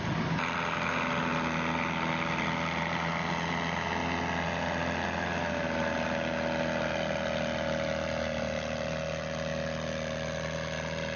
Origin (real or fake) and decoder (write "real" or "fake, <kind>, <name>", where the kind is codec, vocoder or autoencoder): real